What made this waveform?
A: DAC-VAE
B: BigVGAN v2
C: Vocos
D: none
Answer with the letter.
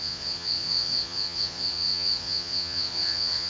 C